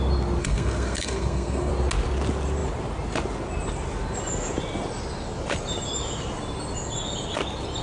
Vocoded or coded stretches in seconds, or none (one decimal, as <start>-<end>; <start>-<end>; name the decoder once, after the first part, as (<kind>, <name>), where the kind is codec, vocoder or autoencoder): 0.4-1.7 (codec, SNAC)